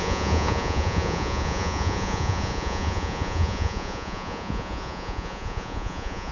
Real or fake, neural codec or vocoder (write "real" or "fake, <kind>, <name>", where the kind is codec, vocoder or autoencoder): fake, vocoder, Vocos